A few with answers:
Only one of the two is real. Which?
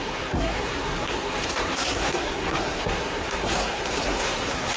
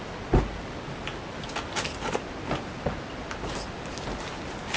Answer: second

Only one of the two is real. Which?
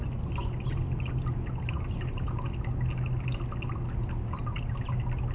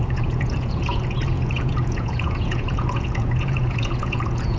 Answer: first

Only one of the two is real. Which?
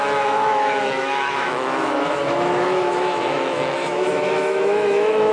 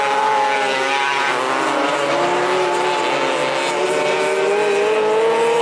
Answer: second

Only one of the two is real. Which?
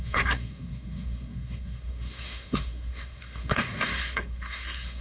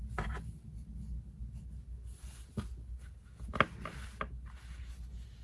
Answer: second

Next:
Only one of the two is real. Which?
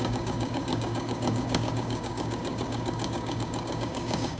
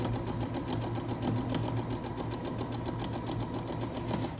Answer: second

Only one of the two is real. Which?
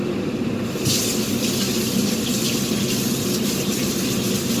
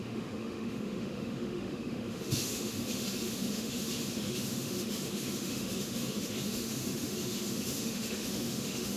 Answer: first